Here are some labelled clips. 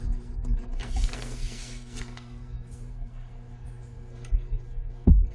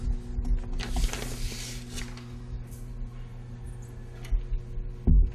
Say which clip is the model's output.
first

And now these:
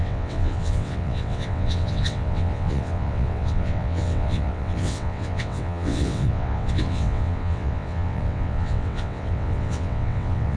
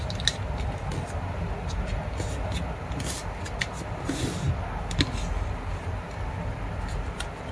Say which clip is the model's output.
first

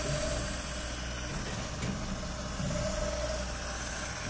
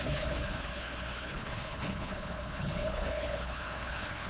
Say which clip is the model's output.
second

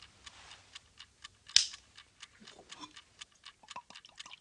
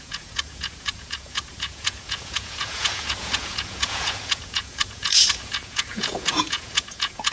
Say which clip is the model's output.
second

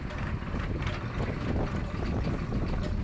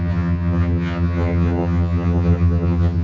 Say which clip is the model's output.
second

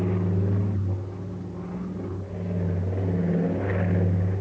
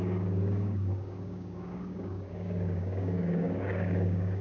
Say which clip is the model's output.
second